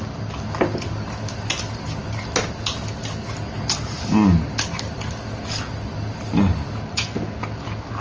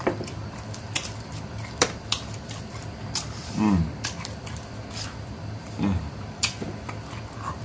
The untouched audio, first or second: first